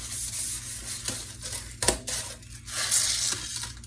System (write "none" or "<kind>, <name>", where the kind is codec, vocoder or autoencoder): none